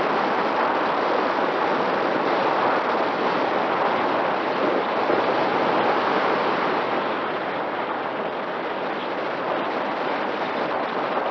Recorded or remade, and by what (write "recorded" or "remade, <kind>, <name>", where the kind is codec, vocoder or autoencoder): recorded